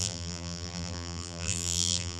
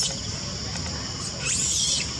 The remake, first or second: first